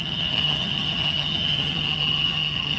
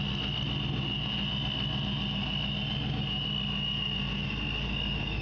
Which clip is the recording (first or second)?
second